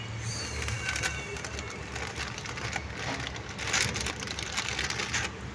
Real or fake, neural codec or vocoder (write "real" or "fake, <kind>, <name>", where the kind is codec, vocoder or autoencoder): real